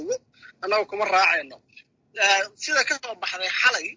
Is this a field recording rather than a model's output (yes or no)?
yes